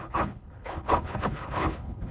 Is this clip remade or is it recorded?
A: remade